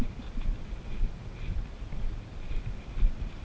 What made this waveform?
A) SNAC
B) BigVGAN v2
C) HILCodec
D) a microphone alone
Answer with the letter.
D